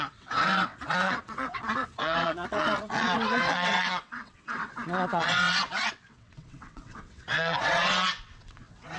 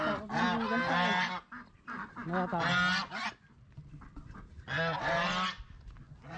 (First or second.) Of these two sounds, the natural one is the second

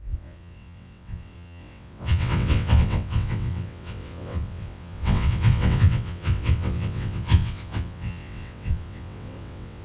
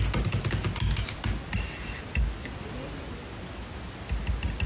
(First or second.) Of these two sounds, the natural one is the second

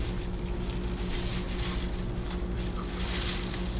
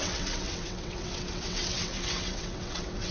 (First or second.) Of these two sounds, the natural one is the first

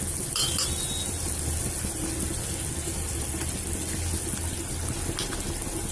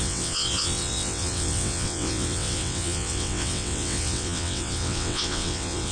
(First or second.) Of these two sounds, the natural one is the first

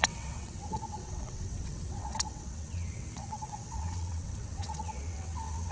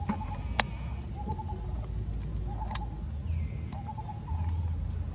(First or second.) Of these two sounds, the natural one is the second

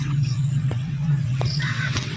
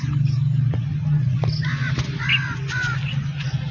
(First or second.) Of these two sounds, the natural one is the second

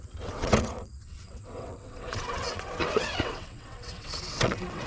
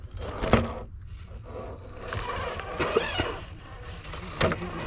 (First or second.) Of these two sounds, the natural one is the second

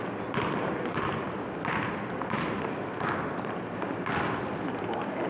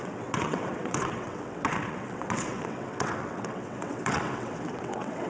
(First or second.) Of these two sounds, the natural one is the first